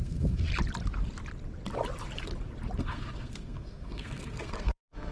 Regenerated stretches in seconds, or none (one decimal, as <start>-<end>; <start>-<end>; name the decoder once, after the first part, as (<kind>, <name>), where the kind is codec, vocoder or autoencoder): 0.0-0.5 (codec, SNAC); 2.8-5.1

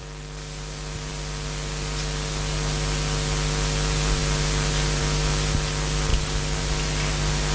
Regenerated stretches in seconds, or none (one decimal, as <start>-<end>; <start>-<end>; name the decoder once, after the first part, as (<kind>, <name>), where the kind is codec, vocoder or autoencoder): none

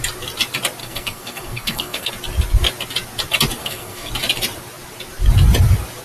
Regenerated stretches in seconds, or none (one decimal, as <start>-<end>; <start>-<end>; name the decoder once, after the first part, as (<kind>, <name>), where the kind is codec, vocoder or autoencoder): 0.8-2.1 (codec, SNAC); 3.6-4.1

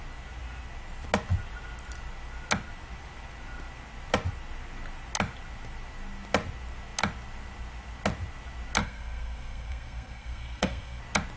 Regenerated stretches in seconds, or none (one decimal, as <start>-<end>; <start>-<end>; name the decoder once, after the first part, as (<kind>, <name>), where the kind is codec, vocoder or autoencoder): 8.8-11.0 (codec, SNAC)

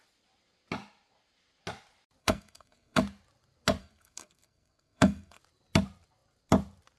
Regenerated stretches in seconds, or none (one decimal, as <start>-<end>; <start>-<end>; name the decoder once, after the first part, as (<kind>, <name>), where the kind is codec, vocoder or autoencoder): 2.2-3.0 (codec, SNAC); 3.8-5.4

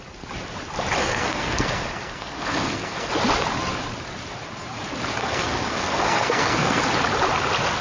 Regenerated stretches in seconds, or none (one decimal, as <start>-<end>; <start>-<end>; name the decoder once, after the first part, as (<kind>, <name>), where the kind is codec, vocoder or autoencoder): 1.0-3.1 (codec, SNAC); 5.2-6.8

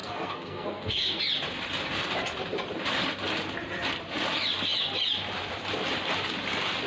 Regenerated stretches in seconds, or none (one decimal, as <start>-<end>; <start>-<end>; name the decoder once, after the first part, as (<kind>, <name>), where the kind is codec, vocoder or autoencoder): 0.0-1.2 (codec, SNAC)

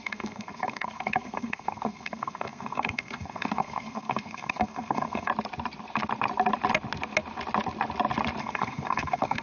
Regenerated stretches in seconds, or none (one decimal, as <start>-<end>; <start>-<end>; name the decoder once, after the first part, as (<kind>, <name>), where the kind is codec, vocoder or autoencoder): 0.0-5.3 (codec, SNAC); 8.4-9.4